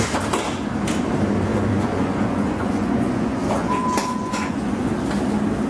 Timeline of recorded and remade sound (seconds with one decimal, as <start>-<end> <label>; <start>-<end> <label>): 0.0-1.5 recorded; 1.5-4.9 remade; 4.9-5.7 recorded